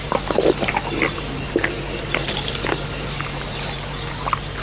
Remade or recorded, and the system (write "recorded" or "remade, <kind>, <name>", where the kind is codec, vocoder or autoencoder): recorded